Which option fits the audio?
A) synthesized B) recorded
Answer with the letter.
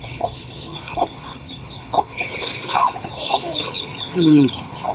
A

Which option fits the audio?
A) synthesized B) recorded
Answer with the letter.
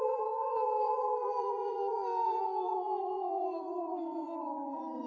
A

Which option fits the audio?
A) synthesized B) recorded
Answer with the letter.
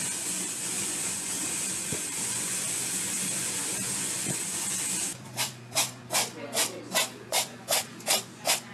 A